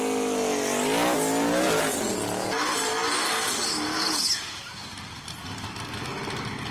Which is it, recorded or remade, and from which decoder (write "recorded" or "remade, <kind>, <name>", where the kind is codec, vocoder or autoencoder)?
recorded